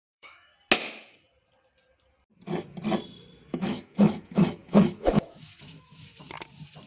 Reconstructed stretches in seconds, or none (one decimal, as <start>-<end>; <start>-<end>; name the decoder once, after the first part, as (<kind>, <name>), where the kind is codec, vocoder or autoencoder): 0.0-0.5 (autoencoder, DAC-VAE); 3.5-6.1